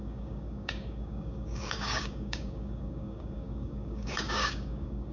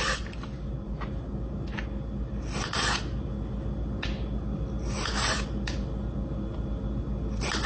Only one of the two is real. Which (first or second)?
second